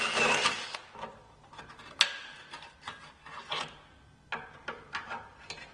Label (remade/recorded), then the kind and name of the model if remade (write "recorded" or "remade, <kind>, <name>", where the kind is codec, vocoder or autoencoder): recorded